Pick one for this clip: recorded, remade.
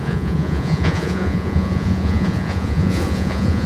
remade